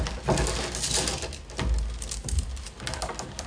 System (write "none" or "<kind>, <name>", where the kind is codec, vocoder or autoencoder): none